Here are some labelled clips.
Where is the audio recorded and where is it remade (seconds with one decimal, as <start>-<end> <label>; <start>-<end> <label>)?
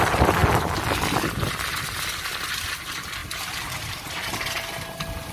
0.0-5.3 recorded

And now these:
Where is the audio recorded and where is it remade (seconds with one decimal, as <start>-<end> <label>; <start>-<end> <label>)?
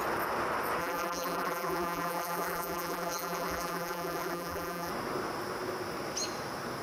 0.0-0.8 recorded; 0.8-4.9 remade; 4.9-6.8 recorded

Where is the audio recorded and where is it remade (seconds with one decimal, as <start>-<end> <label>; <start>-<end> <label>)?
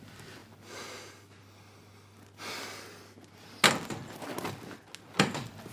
0.0-5.7 recorded